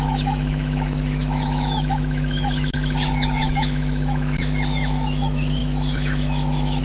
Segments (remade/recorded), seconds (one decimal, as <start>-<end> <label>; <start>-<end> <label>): 0.0-6.8 remade